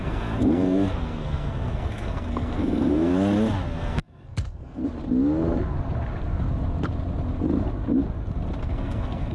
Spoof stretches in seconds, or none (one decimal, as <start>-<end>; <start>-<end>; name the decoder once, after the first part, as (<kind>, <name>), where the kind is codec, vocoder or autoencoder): 0.0-3.1 (codec, SNAC); 3.8-4.8; 8.6-9.3